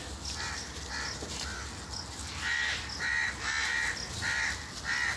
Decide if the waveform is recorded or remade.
recorded